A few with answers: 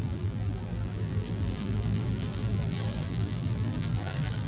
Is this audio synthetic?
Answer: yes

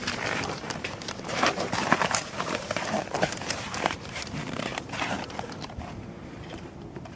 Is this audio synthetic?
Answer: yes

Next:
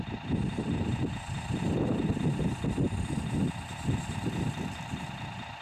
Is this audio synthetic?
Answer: no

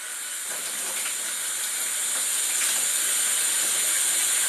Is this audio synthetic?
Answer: no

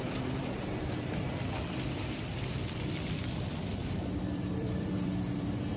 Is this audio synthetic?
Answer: yes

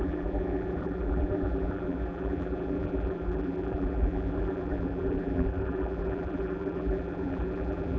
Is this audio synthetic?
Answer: yes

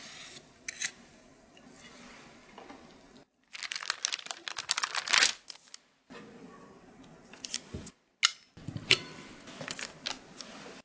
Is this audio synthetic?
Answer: no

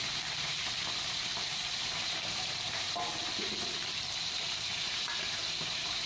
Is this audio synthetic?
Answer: yes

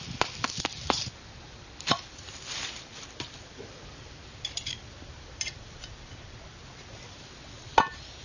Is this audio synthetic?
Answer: yes